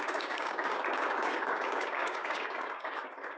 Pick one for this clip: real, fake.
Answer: fake